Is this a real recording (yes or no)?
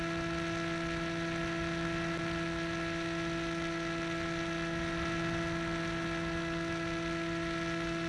yes